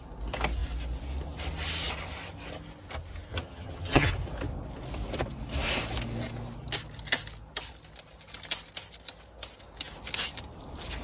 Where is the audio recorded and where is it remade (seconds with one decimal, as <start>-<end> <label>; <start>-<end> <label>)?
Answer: 0.0-3.3 recorded; 3.3-4.1 remade; 4.1-11.0 recorded